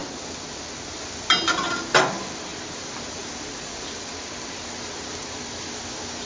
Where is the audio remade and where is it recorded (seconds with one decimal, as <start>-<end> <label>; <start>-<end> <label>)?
0.0-2.5 recorded; 2.5-5.7 remade; 5.7-6.3 recorded